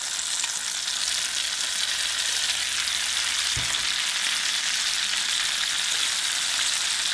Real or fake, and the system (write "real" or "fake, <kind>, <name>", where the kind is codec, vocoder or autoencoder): real